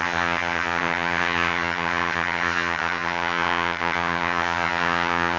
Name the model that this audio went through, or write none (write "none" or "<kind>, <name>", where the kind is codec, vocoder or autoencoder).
vocoder, HiFi-GAN